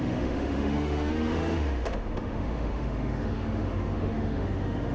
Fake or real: fake